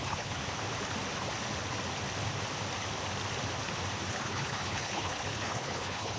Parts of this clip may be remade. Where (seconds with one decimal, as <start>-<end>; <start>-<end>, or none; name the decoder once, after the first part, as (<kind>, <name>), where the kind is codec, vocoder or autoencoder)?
0.0-0.4 (codec, HILCodec); 4.1-6.2